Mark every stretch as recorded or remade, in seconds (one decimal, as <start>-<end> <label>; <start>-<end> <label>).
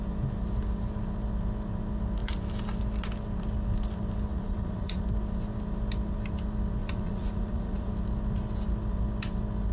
0.0-4.3 recorded; 4.3-5.0 remade; 5.0-6.8 recorded; 6.8-7.9 remade; 7.9-9.7 recorded